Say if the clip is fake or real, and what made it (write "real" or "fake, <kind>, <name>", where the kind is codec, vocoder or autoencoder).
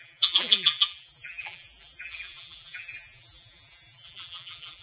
fake, vocoder, BigVGAN v2